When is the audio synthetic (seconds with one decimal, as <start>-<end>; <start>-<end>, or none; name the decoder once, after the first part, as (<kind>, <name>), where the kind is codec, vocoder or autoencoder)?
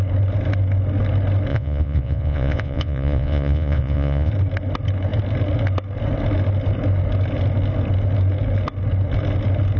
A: 1.5-4.3 (vocoder, Vocos)